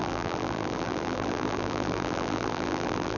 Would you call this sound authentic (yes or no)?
no